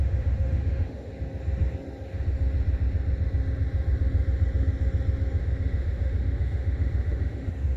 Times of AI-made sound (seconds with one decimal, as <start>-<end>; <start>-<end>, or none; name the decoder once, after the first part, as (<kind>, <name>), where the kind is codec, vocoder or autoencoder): 0.0-1.1 (autoencoder, DAC-VAE); 5.4-7.8